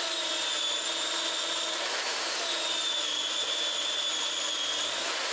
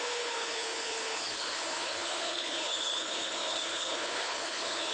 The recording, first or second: first